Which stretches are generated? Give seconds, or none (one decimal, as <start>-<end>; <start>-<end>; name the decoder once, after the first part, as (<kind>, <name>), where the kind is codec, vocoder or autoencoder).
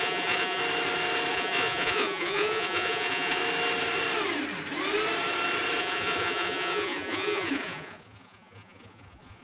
0.0-0.6 (vocoder, Vocos); 1.3-3.4; 5.8-9.4